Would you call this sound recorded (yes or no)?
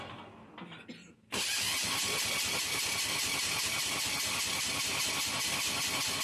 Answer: yes